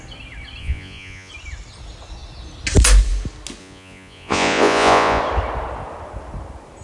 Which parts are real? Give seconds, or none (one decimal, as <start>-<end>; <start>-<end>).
0.0-0.6; 1.3-3.6; 5.2-6.8